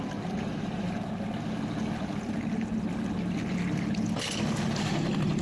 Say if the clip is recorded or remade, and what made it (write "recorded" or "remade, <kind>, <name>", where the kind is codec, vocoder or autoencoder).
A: recorded